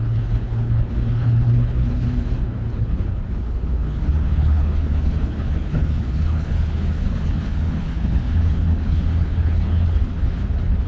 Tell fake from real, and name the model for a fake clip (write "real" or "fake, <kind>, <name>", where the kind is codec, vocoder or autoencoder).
fake, codec, HILCodec